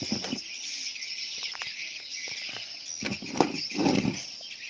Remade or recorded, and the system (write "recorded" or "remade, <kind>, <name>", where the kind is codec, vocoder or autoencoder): recorded